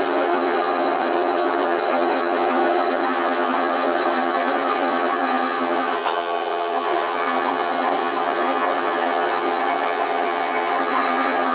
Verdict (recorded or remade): remade